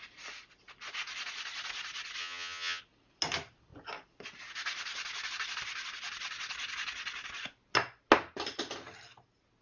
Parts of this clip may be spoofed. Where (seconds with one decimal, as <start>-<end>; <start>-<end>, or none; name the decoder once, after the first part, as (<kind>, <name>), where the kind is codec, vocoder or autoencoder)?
2.2-2.8 (vocoder, HiFi-GAN)